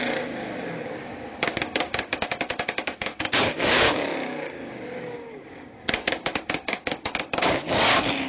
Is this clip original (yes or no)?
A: no